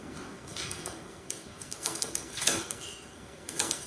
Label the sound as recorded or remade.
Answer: remade